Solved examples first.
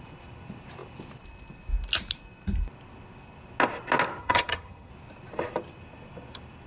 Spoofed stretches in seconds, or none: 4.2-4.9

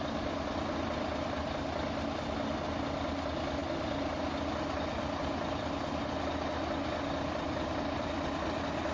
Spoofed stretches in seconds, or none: none

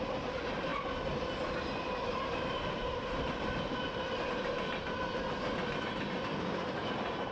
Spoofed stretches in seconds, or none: none

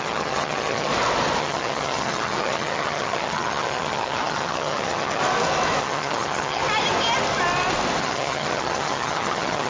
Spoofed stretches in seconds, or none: 0.0-0.9; 1.4-5.2; 5.8-6.6; 8.0-9.7